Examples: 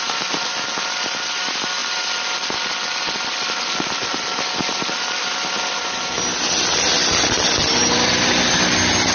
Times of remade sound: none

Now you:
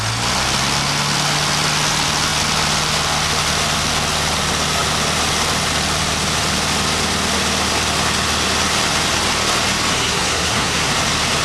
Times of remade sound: 9.9-10.9 (codec, SNAC)

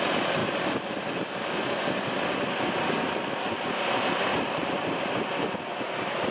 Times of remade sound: none

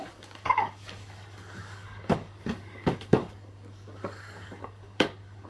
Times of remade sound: 0.0-5.5 (codec, DAC)

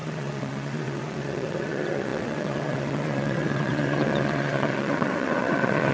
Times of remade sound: 0.0-5.9 (vocoder, WaveNeXt)